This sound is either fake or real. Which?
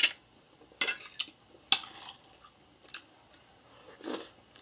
real